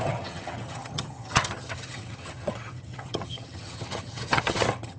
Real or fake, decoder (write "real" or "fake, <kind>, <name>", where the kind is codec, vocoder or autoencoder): fake, vocoder, HiFi-GAN